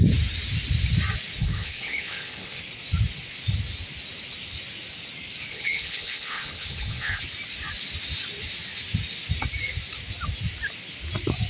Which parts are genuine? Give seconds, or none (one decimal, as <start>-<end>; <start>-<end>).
0.0-1.4; 2.6-5.5; 7.2-11.5